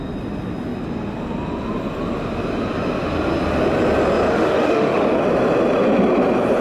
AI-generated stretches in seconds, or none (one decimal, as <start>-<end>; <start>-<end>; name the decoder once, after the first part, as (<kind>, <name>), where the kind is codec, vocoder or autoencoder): 4.3-5.0 (autoencoder, DAC-VAE)